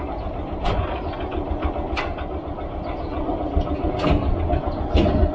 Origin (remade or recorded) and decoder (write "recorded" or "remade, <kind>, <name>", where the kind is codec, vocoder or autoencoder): recorded